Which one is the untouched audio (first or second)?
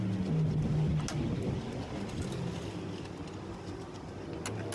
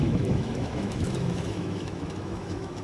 first